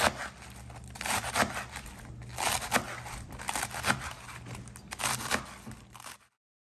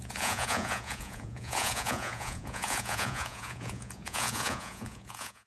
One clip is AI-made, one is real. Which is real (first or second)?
first